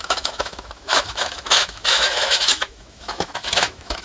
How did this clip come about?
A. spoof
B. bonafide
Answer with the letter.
A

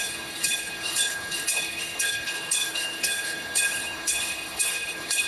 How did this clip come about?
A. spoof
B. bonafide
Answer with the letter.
A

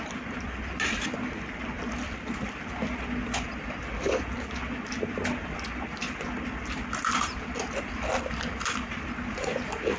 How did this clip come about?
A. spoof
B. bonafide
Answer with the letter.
B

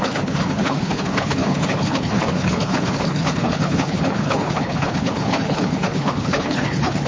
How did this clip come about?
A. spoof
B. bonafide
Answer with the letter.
A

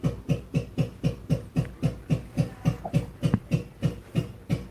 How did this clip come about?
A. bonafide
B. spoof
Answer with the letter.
A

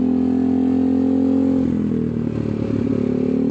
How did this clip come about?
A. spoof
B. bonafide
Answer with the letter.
B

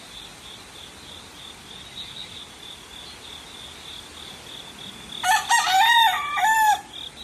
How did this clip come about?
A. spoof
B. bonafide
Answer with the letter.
B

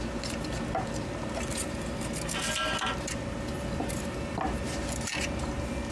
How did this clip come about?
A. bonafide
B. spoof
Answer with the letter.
A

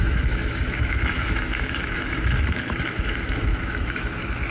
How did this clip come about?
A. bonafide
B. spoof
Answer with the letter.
B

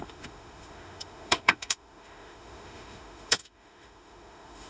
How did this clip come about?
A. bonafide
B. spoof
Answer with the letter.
B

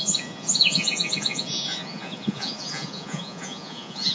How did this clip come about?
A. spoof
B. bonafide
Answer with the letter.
A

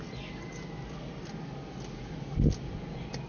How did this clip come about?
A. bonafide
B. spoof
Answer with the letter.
A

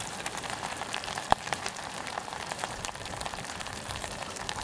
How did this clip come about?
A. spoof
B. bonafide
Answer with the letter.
A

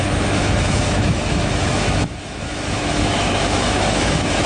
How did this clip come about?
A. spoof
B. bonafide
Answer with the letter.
A